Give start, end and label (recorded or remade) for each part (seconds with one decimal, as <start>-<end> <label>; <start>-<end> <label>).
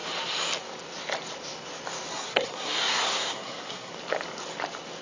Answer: 0.0-2.1 recorded; 2.1-3.9 remade; 3.9-5.0 recorded